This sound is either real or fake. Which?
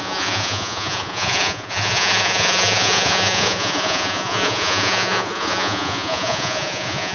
fake